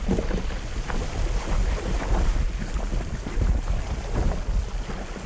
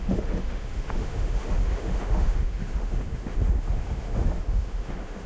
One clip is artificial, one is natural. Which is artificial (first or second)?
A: second